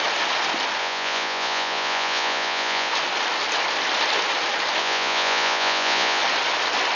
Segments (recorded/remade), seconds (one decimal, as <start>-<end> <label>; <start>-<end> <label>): 0.0-0.8 recorded; 0.8-2.9 remade; 2.9-4.8 recorded; 4.8-6.2 remade; 6.2-7.0 recorded